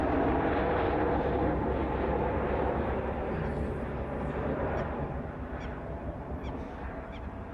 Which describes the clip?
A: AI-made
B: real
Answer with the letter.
B